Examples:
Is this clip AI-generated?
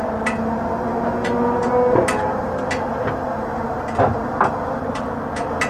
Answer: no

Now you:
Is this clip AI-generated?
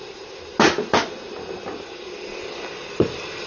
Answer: no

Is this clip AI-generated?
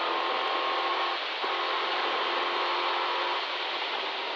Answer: no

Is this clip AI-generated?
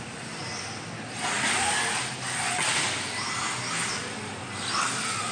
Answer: no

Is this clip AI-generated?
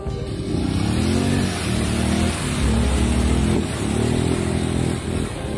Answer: no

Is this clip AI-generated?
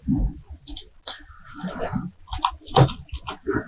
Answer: no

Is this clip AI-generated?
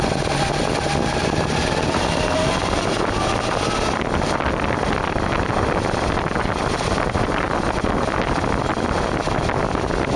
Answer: no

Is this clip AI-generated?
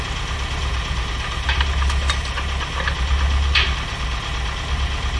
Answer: no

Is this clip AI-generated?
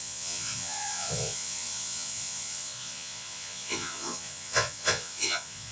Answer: yes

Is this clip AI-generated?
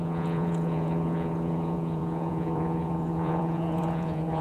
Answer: yes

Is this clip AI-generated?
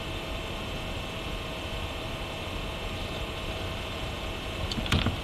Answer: yes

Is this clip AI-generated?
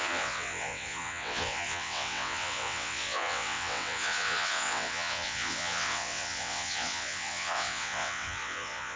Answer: yes